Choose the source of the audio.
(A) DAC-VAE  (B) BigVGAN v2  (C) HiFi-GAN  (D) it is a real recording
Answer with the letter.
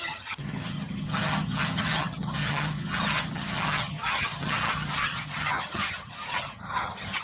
C